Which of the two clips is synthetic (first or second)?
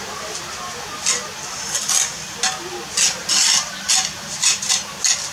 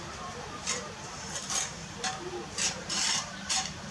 second